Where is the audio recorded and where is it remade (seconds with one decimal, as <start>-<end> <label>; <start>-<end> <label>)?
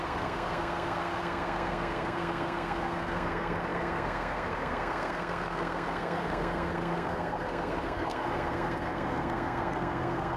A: 0.0-10.4 remade